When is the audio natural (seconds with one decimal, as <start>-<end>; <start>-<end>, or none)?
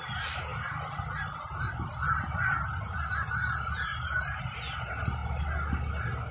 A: 0.0-3.9; 4.4-6.3